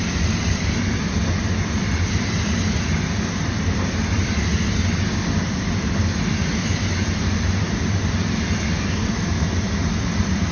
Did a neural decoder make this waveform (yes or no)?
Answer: yes